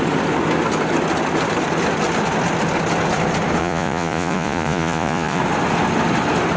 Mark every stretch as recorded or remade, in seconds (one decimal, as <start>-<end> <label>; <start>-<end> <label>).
0.0-3.6 recorded; 3.6-5.4 remade; 5.4-6.6 recorded